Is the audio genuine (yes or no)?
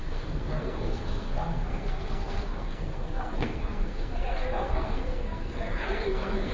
no